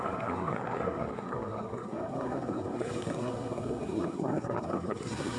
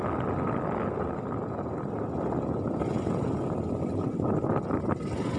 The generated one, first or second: first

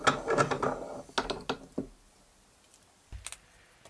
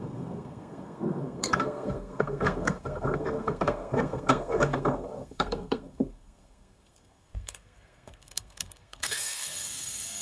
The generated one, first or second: second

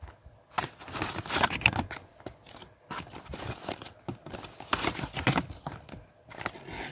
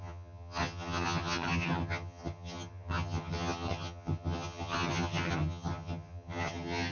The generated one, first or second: second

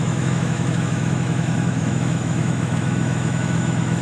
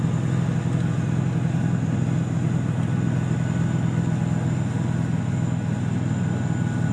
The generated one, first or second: first